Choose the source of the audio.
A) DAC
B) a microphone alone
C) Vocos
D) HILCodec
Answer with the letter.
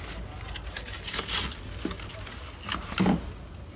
B